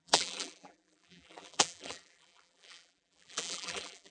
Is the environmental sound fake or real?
fake